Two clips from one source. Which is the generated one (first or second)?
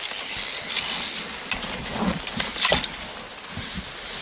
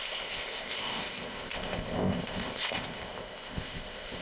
second